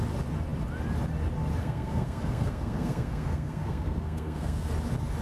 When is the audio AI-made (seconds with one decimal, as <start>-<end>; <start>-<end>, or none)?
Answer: 1.6-4.7